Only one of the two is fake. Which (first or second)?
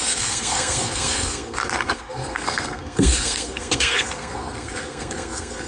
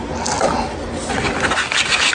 first